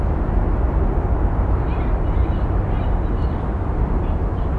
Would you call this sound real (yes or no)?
yes